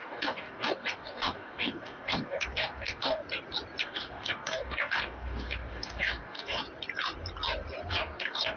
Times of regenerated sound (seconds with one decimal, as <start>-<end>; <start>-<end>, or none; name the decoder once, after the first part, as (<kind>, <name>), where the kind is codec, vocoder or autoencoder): 0.0-3.2 (codec, DAC); 3.8-6.6; 7.9-8.6